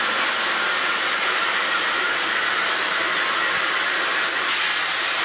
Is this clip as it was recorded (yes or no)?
yes